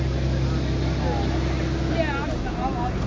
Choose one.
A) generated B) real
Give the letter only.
B